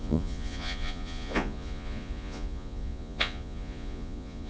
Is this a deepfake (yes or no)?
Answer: yes